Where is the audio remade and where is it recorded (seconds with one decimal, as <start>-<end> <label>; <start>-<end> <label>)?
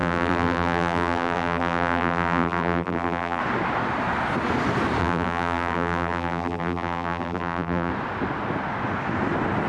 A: 0.0-3.4 remade; 3.4-5.0 recorded; 5.0-7.9 remade; 7.9-9.7 recorded